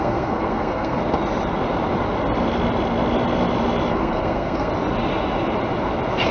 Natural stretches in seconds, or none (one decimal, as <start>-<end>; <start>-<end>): 1.0-3.9; 4.7-6.3